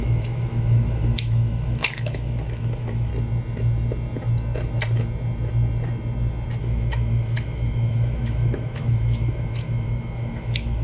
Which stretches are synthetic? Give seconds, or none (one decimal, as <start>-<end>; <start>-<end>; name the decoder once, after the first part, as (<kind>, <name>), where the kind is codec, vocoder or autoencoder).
0.0-3.1 (autoencoder, DAC-VAE); 6.6-10.8